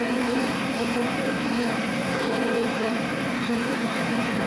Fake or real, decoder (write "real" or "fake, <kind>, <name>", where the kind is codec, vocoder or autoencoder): fake, codec, SNAC